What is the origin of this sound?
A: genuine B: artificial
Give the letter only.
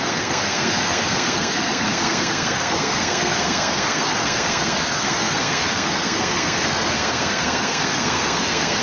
B